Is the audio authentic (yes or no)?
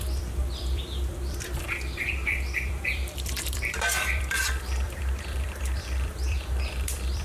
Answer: no